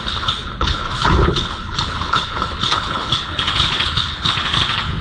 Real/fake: fake